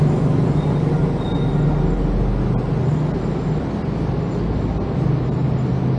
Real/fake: real